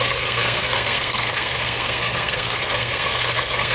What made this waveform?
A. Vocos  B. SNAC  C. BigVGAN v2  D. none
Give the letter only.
B